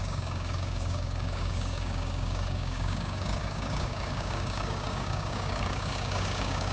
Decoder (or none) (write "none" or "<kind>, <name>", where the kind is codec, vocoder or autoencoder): codec, DAC